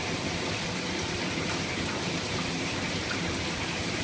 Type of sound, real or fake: fake